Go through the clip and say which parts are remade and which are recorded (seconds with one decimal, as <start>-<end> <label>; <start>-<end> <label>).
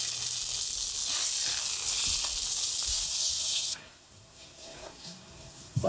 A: 0.0-2.9 recorded; 2.9-5.9 remade